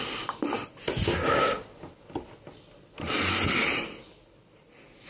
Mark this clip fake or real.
real